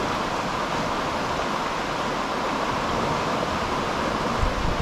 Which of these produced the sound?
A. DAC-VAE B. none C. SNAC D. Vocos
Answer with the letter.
B